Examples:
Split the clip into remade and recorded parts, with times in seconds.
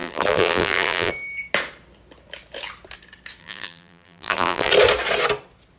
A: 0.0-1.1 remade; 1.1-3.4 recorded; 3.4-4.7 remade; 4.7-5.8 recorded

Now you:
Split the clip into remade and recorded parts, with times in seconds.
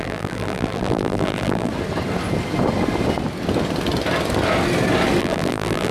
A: 0.0-1.7 remade; 1.7-5.2 recorded; 5.2-5.9 remade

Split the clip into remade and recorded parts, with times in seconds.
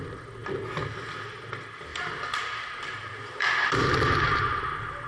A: 0.0-1.9 recorded; 1.9-5.1 remade